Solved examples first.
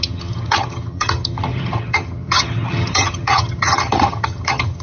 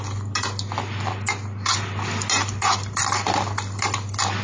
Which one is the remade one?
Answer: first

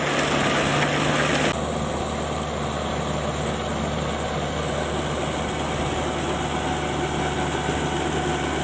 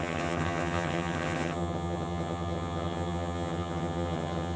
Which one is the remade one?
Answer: second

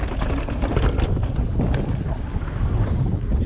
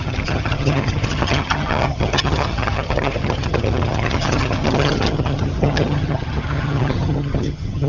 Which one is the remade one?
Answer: second